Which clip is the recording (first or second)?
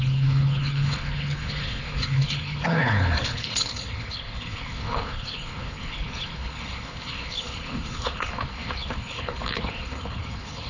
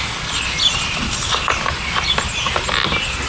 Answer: second